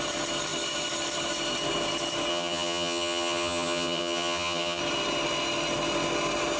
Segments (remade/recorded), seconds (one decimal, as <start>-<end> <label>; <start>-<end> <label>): 0.0-2.3 recorded; 2.3-4.8 remade; 4.8-6.6 recorded